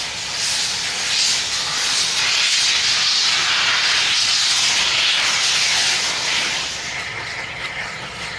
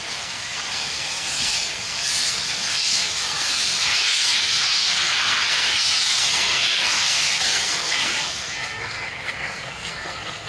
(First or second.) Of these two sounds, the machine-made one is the second